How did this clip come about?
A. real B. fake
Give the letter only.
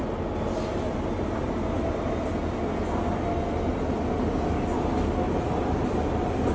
A